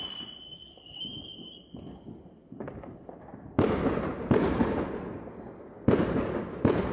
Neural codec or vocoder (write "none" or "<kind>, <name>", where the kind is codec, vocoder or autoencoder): none